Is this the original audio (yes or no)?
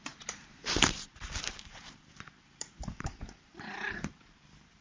no